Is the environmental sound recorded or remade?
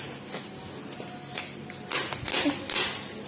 recorded